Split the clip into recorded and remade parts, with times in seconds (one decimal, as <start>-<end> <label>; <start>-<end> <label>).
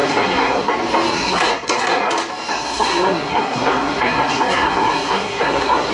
0.0-0.7 remade; 0.7-1.1 recorded; 1.1-2.1 remade; 2.1-2.5 recorded; 2.5-5.9 remade